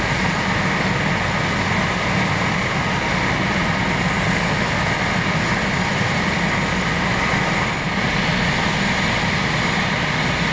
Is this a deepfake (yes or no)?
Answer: no